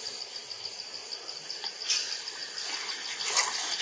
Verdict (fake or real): real